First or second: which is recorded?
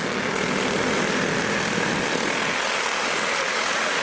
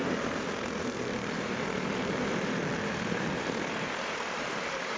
first